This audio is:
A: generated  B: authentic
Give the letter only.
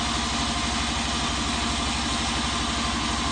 B